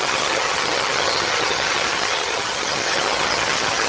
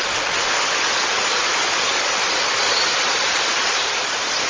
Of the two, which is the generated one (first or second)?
first